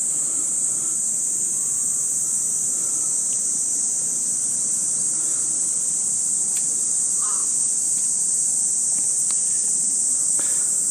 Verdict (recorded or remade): remade